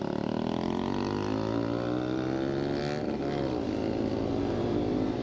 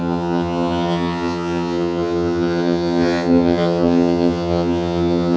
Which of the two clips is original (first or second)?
first